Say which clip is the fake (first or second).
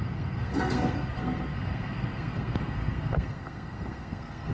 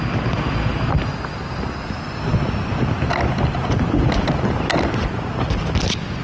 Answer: first